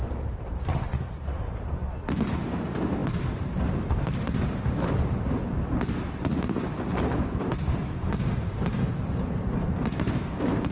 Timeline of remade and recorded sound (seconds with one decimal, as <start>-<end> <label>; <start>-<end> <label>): 0.0-0.9 remade; 0.9-2.3 recorded; 2.3-10.7 remade